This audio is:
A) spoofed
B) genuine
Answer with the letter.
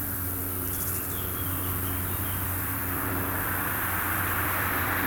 A